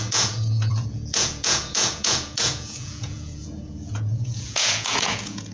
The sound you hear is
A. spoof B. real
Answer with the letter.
A